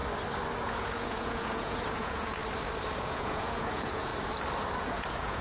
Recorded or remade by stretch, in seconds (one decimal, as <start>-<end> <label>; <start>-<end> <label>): 0.0-0.6 recorded; 0.6-2.4 remade; 2.4-3.0 recorded; 3.0-4.1 remade; 4.1-4.8 recorded; 4.8-5.4 remade

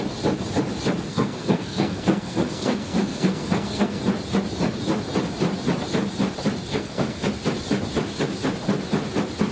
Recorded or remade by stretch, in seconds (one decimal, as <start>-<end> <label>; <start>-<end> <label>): 0.0-1.1 recorded; 1.1-4.0 remade; 4.0-6.7 recorded; 6.7-7.3 remade; 7.3-9.5 recorded